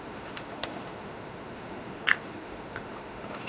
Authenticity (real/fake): fake